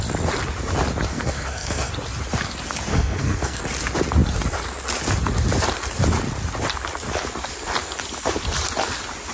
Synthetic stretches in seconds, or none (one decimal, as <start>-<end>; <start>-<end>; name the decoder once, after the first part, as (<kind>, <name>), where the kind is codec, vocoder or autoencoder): 1.1-1.9 (codec, SNAC); 2.9-3.6